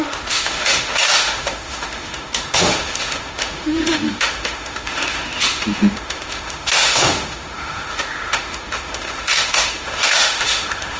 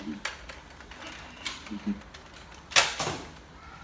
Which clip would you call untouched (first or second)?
second